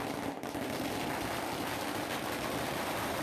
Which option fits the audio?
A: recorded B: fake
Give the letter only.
A